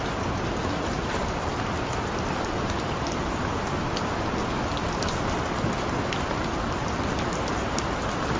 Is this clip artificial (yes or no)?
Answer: no